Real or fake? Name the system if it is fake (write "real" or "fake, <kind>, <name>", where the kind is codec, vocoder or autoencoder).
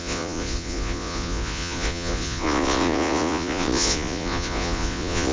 fake, vocoder, Vocos